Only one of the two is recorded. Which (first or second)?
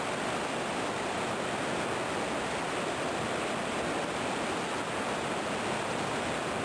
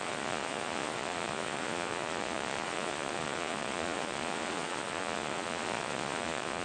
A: first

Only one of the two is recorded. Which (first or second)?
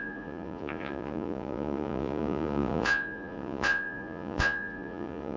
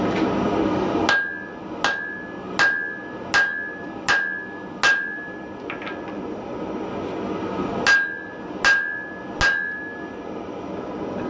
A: second